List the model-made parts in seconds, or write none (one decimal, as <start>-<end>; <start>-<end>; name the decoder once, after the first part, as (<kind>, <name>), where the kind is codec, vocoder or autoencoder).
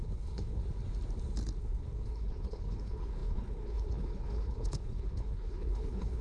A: 0.0-0.6 (codec, HILCodec); 1.6-6.2